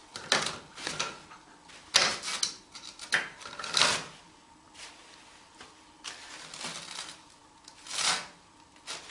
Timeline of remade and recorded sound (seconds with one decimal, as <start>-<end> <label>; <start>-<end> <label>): 0.0-9.1 recorded